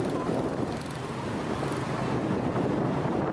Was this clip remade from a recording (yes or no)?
no